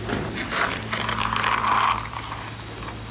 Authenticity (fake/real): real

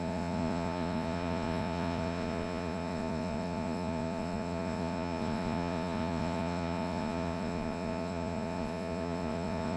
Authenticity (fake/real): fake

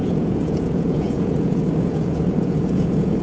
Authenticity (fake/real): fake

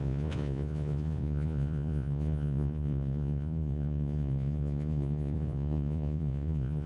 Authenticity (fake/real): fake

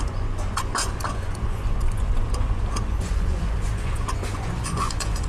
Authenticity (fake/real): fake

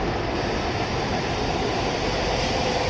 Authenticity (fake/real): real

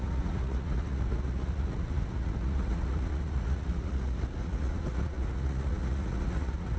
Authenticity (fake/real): fake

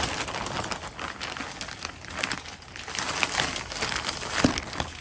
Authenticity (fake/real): real